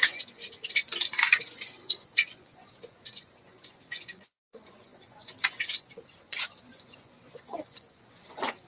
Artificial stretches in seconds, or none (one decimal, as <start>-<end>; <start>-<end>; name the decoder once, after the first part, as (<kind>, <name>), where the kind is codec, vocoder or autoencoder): 0.0-8.7 (vocoder, Vocos)